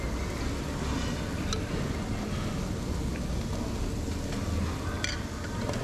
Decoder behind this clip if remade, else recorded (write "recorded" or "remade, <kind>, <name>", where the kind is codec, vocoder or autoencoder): recorded